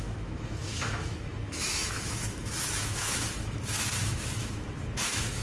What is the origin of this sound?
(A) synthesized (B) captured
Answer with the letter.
A